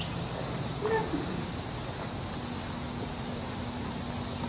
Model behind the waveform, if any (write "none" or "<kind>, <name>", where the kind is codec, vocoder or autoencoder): none